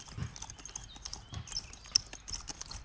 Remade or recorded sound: recorded